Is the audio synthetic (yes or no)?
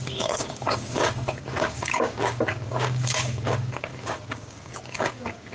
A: yes